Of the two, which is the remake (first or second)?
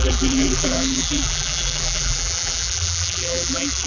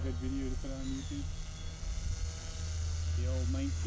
first